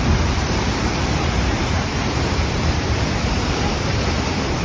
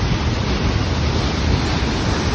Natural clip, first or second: second